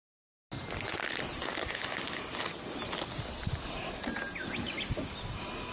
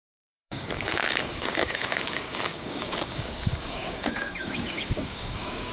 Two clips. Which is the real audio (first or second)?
first